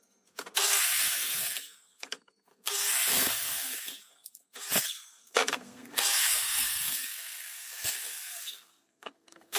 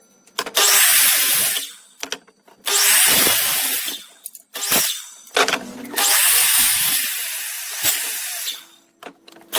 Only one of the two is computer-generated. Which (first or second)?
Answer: first